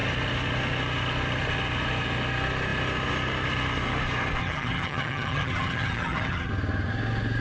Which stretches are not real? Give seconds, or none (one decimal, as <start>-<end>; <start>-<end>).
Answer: 4.4-6.5